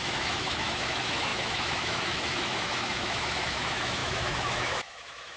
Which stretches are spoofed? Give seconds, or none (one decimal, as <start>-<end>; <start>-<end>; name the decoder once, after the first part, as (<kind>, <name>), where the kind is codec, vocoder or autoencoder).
0.0-5.4 (autoencoder, DAC-VAE)